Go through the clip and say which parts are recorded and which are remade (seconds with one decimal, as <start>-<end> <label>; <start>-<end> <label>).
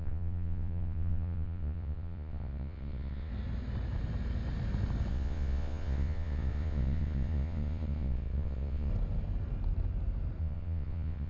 0.0-3.3 remade; 3.3-5.1 recorded; 5.1-8.9 remade; 8.9-10.4 recorded; 10.4-11.3 remade